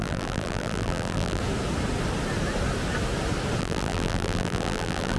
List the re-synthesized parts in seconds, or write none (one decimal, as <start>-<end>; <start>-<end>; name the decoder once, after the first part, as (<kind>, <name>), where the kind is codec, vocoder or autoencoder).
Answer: 0.0-1.4 (vocoder, BigVGAN v2); 3.6-5.2